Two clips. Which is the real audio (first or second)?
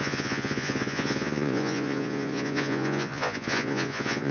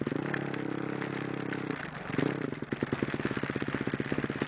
second